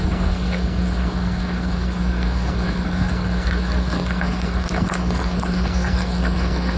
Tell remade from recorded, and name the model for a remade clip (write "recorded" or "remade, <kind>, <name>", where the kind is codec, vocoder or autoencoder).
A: remade, codec, SNAC